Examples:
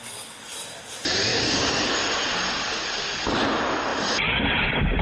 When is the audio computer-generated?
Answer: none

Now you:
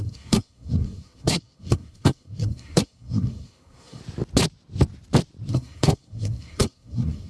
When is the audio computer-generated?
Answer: 0.0-4.0 (codec, SNAC); 5.5-7.3

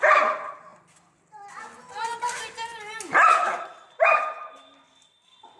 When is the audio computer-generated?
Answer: none

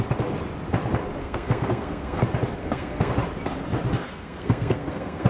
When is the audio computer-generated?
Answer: 1.2-2.2 (codec, SNAC); 2.6-3.1; 4.0-5.3